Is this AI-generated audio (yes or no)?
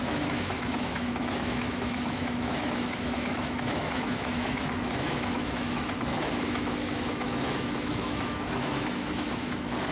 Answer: yes